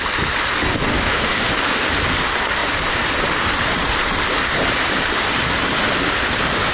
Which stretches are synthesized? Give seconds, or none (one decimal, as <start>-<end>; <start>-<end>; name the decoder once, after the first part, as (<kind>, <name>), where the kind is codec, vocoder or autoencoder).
0.9-1.5 (autoencoder, DAC-VAE)